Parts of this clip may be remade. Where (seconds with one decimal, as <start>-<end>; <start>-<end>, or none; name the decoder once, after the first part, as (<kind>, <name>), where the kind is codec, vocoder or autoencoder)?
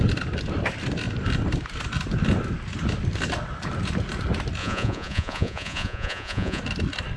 4.6-6.6 (vocoder, Vocos)